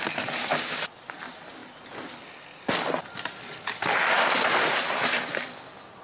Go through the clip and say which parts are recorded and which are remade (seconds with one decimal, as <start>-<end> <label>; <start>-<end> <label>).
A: 0.0-6.0 recorded